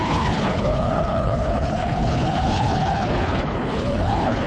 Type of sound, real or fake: fake